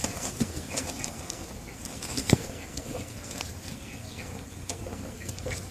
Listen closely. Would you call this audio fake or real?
fake